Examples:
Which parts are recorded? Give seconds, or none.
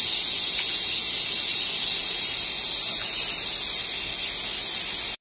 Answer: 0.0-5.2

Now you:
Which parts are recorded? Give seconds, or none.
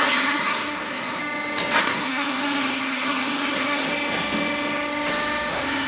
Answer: 1.2-1.8; 3.9-5.5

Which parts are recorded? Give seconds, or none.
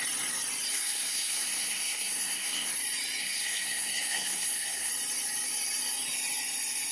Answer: 0.0-0.7; 2.7-3.2; 4.9-6.9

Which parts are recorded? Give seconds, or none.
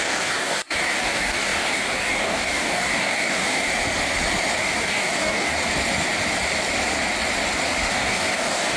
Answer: 3.7-4.6; 5.5-7.9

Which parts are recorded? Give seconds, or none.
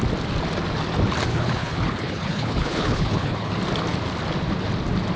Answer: 0.0-1.3; 3.5-5.2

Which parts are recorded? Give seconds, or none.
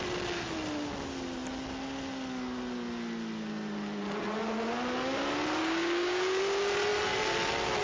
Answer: 0.0-5.6; 6.4-7.8